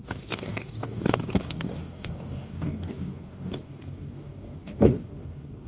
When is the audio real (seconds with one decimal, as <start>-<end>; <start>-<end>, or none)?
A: none